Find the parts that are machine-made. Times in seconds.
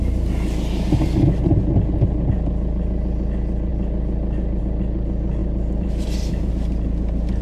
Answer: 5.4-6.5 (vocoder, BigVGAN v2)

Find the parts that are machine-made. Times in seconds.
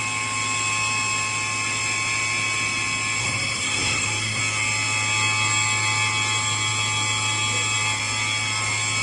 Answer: 3.2-4.4 (codec, SNAC)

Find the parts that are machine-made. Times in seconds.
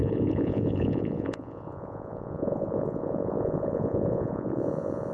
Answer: 0.0-5.1 (vocoder, Vocos)